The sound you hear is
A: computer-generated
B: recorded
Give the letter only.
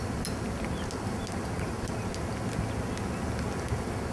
B